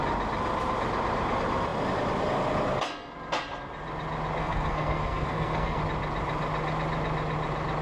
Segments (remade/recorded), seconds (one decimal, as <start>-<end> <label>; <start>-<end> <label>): 0.0-4.4 recorded; 4.4-5.8 remade; 5.8-7.8 recorded